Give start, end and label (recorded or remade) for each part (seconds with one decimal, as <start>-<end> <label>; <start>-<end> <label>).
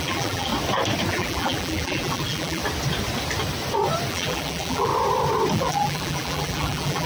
0.0-0.5 remade; 0.5-1.1 recorded; 1.1-2.6 remade; 2.6-4.1 recorded; 4.1-4.9 remade; 4.9-5.5 recorded; 5.5-7.1 remade